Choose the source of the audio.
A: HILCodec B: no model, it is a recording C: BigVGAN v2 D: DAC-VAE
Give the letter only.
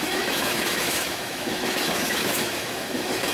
D